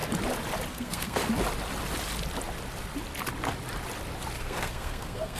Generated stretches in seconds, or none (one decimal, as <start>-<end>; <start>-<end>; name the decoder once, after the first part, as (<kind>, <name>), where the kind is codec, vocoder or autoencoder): 0.7-1.2 (codec, SNAC); 4.4-5.4